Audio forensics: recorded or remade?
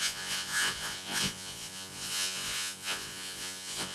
remade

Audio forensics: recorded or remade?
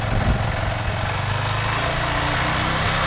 recorded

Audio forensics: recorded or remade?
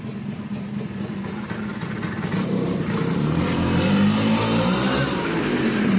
remade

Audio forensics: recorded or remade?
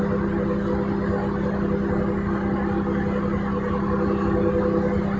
recorded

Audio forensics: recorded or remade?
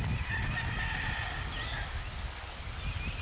recorded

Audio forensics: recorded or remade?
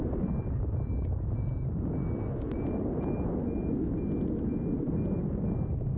recorded